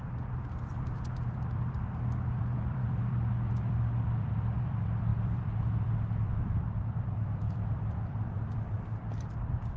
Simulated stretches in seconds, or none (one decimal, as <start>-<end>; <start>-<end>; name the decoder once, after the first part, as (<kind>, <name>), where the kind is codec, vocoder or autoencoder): 0.7-9.8 (vocoder, BigVGAN v2)